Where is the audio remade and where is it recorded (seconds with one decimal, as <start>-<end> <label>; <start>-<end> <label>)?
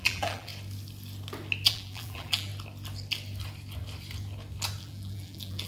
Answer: 0.0-0.5 remade; 0.5-1.7 recorded; 1.7-2.5 remade; 2.5-4.8 recorded; 4.8-5.7 remade